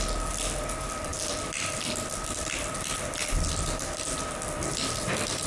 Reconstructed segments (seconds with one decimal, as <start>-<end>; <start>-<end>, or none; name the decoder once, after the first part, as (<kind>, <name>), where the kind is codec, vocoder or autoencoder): 1.1-4.2 (vocoder, BigVGAN v2)

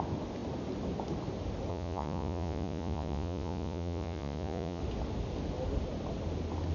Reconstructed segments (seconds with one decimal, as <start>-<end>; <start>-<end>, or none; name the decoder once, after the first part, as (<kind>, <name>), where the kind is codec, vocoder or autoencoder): 1.7-4.8 (vocoder, Vocos)